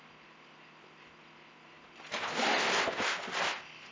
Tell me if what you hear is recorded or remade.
recorded